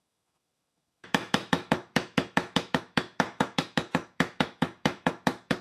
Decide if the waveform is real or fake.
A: fake